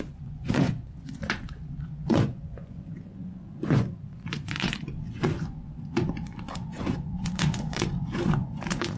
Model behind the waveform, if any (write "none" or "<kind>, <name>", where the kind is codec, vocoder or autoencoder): vocoder, Vocos